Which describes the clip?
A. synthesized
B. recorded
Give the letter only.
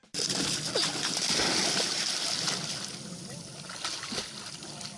B